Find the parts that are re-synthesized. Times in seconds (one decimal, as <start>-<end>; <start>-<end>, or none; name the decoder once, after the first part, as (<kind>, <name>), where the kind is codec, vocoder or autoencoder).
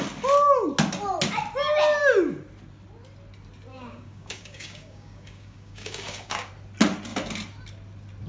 3.7-6.5 (codec, DAC)